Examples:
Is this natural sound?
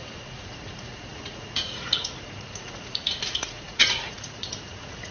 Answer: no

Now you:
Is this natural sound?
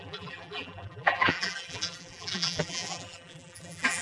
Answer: no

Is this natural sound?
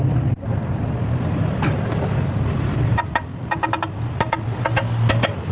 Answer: yes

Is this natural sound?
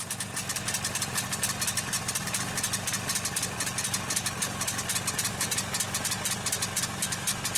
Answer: yes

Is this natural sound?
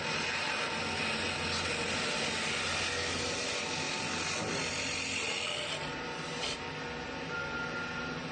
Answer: yes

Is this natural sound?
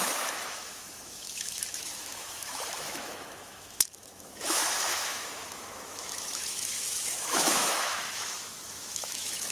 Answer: no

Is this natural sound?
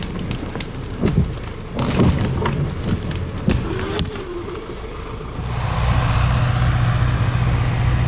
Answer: yes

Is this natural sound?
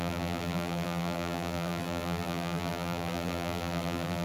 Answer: no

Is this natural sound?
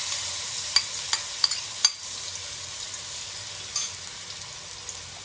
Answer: yes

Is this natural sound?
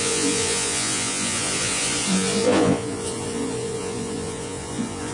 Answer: no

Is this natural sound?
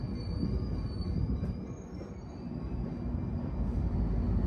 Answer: yes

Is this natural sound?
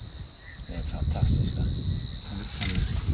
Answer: yes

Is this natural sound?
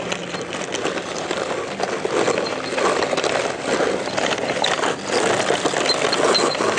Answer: yes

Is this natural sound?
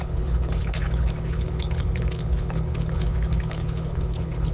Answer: no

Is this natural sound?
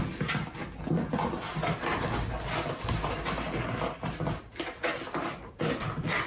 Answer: yes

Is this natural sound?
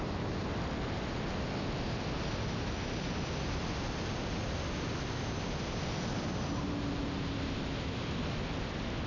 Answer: yes